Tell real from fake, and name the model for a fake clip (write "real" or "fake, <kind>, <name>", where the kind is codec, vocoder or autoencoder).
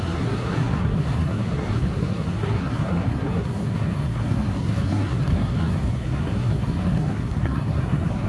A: fake, codec, SNAC